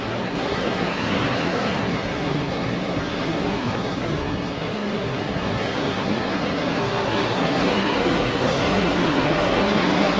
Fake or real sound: fake